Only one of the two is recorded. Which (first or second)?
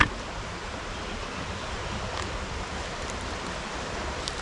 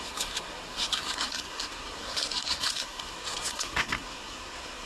first